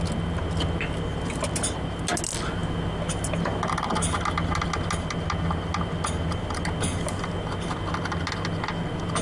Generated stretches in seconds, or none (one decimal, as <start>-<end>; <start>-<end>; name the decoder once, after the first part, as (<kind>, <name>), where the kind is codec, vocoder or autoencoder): none